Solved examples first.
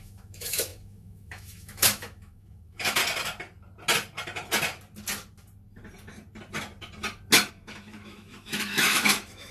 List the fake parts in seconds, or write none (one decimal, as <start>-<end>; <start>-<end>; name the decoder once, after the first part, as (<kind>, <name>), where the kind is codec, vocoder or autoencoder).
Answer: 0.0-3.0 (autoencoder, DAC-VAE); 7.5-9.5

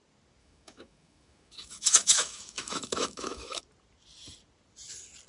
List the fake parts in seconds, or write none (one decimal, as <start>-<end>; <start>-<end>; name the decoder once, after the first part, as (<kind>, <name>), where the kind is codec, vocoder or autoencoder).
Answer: 0.4-3.6 (autoencoder, DAC-VAE)

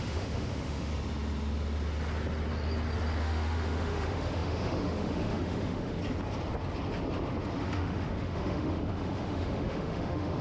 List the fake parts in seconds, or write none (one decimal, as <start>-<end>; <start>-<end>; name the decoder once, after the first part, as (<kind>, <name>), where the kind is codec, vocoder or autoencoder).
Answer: 0.0-0.9 (autoencoder, DAC-VAE); 3.2-6.0; 7.6-10.4

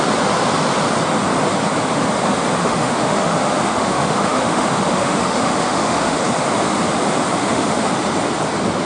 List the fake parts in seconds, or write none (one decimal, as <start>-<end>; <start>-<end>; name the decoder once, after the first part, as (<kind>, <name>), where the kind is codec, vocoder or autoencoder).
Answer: 2.6-6.2 (autoencoder, DAC-VAE); 7.4-7.9

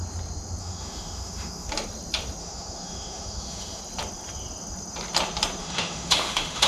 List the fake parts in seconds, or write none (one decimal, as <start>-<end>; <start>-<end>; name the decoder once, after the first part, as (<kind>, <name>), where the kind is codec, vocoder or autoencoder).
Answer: 0.6-1.7 (autoencoder, DAC-VAE); 2.4-3.8; 5.6-6.7

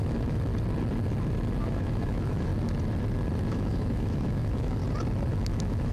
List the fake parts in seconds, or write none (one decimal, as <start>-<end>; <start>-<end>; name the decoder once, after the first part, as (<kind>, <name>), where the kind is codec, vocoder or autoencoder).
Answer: 0.0-0.5 (autoencoder, DAC-VAE); 1.6-2.5; 3.5-4.8; 5.3-5.9

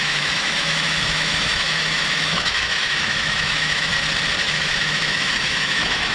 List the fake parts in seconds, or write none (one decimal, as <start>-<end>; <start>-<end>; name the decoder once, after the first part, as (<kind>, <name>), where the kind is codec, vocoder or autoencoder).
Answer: 0.0-3.9 (autoencoder, DAC-VAE); 4.4-6.1